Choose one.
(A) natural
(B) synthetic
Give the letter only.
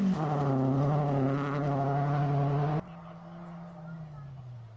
A